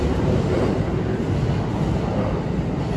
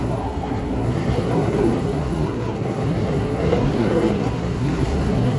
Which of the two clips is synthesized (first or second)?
second